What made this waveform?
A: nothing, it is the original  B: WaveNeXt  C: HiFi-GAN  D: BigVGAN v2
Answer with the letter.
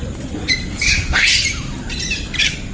D